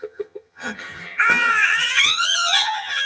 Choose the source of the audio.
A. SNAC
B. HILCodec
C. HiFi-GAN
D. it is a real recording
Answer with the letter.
C